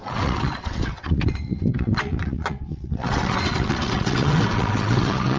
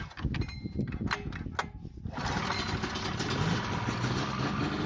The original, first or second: second